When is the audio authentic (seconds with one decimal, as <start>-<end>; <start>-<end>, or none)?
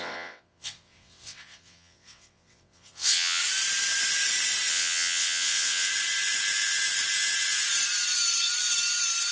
3.4-4.7; 5.9-9.3